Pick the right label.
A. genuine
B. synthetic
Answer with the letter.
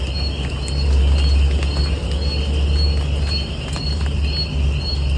A